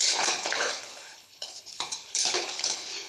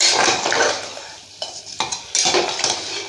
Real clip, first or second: second